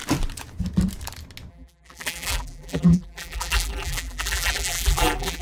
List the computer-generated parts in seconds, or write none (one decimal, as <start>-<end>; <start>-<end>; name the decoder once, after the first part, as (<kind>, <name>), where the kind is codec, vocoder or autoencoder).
1.5-5.4 (vocoder, BigVGAN v2)